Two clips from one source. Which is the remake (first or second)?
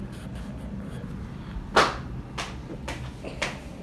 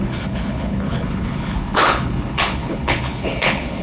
second